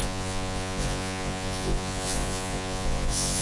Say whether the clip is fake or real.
fake